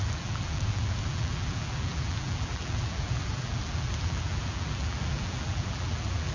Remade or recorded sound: remade